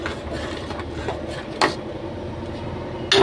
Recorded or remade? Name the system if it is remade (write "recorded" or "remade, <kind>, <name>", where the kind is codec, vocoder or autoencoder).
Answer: recorded